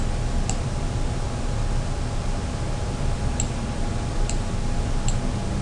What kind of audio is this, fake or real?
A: real